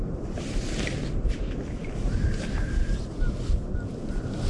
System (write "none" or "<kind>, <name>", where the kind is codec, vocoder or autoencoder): none